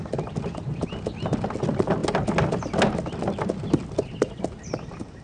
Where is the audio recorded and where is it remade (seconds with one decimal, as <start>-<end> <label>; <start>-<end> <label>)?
0.0-5.2 recorded